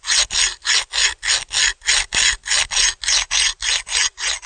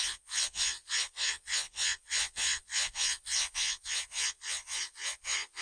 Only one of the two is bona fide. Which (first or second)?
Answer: first